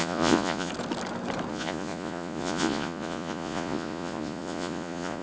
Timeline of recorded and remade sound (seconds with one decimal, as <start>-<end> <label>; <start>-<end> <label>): 0.0-0.7 remade; 0.7-1.5 recorded; 1.5-5.2 remade